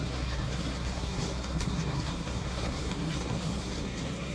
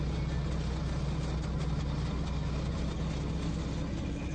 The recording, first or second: second